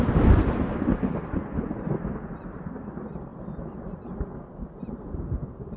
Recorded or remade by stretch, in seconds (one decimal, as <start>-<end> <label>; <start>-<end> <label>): 0.0-5.8 recorded